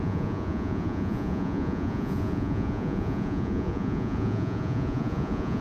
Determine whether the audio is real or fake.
fake